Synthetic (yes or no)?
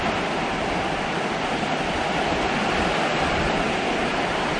no